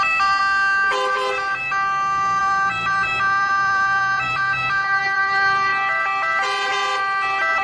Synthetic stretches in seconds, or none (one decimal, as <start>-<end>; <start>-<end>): 0.0-0.4; 2.4-5.7